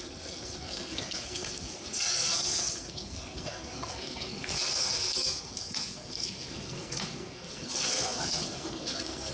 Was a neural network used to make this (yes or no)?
yes